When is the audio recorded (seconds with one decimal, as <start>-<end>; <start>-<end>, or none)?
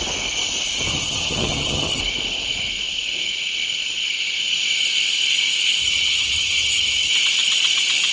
0.0-0.9; 2.0-5.8; 7.1-8.1